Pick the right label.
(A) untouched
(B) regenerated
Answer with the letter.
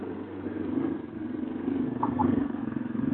B